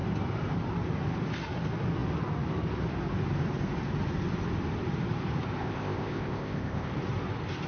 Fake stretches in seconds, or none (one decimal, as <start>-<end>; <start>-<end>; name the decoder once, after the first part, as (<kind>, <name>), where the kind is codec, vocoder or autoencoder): 5.6-6.9 (codec, ZipCodec)